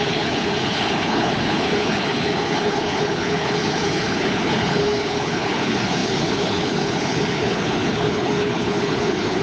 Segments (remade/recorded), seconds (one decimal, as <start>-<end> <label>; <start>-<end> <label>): 0.0-9.4 remade